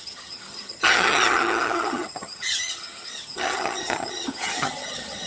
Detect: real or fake fake